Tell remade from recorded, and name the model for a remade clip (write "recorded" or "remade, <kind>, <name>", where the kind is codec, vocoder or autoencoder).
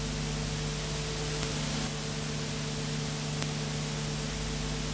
recorded